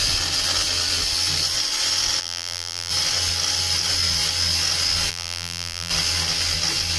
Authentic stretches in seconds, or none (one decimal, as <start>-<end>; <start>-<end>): 0.0-2.2; 2.9-5.1; 5.9-7.0